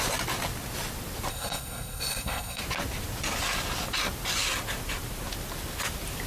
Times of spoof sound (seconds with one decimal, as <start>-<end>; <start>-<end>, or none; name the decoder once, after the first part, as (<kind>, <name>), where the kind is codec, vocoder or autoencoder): 1.3-2.6 (codec, SNAC)